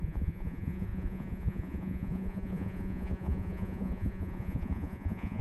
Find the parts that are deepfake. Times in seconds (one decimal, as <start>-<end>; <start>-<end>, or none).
0.0-5.4